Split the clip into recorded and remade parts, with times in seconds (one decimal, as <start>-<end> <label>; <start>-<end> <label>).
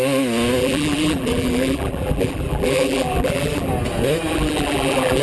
0.0-0.6 recorded; 0.6-3.7 remade; 3.7-4.3 recorded; 4.3-5.2 remade